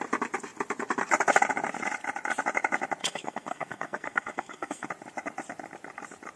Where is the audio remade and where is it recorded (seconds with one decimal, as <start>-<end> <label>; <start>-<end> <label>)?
0.0-3.0 recorded; 3.0-4.9 remade; 4.9-6.4 recorded